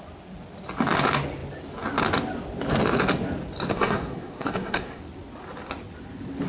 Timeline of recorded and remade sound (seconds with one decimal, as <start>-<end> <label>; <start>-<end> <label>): 0.0-3.7 recorded; 3.7-5.0 remade; 5.0-6.5 recorded